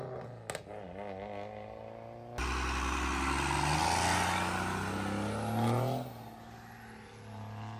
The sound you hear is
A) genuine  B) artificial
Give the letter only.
A